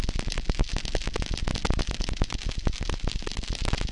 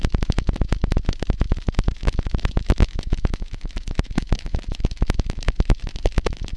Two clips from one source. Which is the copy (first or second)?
second